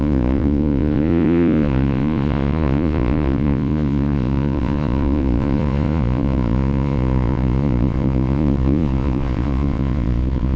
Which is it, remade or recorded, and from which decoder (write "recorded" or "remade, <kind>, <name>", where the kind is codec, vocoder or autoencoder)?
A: remade, vocoder, Vocos